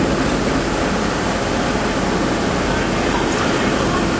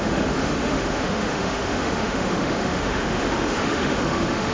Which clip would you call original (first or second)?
first